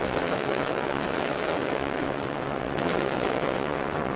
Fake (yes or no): yes